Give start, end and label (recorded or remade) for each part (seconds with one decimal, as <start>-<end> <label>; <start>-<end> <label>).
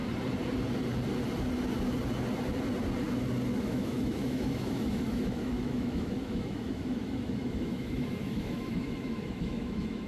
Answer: 0.0-3.6 recorded; 3.6-10.1 remade